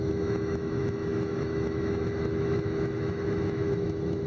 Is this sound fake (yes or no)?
yes